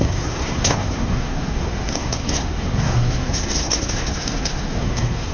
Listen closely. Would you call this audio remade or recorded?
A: remade